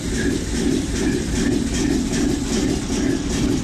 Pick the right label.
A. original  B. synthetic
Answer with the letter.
A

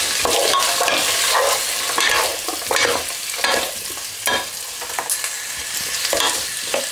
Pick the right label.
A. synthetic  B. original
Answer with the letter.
B